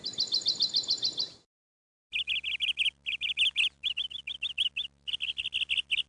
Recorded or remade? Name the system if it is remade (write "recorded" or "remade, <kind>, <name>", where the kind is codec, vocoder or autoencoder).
recorded